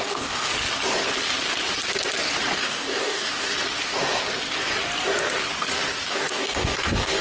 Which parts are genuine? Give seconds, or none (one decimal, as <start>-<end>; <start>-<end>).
0.5-2.6; 3.5-6.1